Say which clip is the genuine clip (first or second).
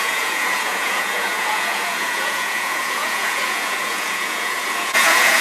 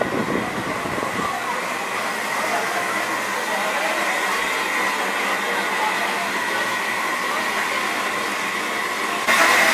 second